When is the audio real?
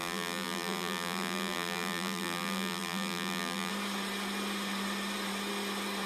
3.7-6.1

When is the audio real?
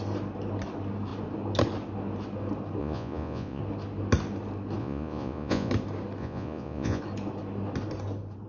0.0-2.8; 3.6-4.8; 5.7-6.2; 7.0-8.5